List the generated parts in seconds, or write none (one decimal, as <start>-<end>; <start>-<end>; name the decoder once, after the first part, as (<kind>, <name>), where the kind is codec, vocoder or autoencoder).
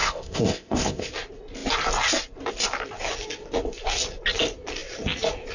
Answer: 0.0-1.1 (codec, ZipCodec)